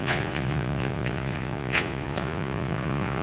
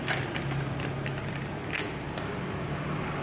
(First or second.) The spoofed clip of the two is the first